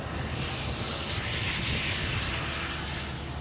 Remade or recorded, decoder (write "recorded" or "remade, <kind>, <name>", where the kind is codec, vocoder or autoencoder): recorded